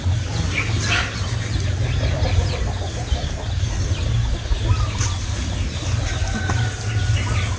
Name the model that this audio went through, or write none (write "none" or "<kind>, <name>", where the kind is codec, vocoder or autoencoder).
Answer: none